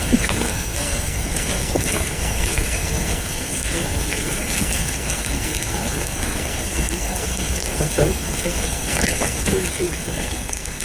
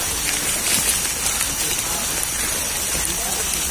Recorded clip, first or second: second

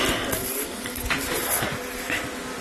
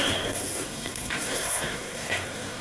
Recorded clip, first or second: first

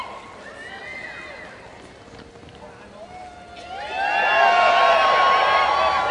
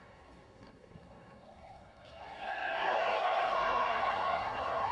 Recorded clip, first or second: first